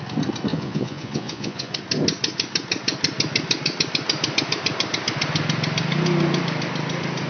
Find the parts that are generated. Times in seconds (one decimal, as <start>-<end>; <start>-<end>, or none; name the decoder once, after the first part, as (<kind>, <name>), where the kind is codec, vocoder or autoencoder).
0.5-1.7 (vocoder, Vocos)